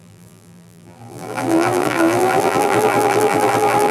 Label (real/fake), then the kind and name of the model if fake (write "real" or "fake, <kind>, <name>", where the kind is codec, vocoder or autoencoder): fake, vocoder, BigVGAN v2